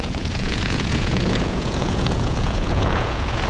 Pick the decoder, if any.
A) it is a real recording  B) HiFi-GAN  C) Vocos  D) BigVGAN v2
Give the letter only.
C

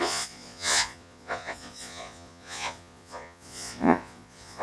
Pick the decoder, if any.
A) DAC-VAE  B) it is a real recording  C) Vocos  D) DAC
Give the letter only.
C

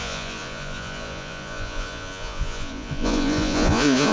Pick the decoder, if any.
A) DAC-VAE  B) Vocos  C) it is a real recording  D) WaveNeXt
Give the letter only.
B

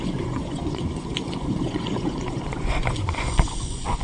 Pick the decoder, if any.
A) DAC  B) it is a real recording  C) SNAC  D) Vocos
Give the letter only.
D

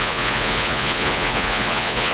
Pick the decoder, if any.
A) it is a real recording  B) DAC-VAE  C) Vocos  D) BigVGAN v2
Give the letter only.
C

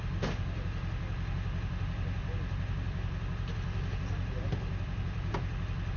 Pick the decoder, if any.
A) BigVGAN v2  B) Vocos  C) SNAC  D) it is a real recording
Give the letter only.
D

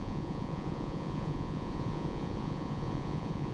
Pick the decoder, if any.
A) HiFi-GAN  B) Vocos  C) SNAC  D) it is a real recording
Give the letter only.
B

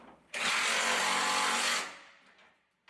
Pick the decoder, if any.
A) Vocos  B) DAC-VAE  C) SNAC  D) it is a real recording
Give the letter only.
D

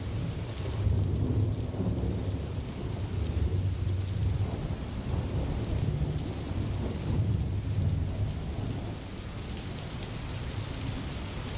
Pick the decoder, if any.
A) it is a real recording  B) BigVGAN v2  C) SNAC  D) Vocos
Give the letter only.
A